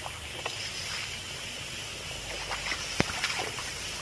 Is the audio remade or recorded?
recorded